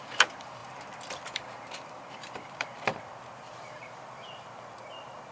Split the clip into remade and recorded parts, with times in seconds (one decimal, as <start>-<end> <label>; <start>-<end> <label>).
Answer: 0.0-5.3 remade